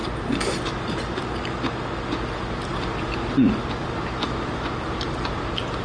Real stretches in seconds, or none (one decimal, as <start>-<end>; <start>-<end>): 0.0-5.8